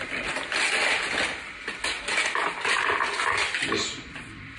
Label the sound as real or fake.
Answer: real